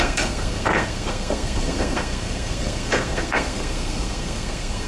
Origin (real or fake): fake